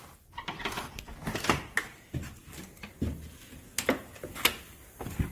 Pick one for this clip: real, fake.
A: real